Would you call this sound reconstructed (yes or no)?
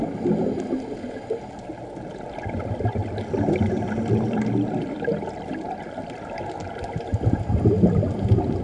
no